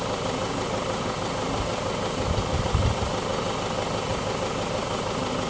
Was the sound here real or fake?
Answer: real